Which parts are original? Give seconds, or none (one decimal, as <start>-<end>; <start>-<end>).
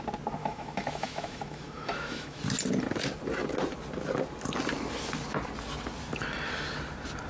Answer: 0.0-0.4; 2.4-7.3